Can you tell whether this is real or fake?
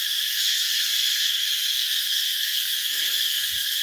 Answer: fake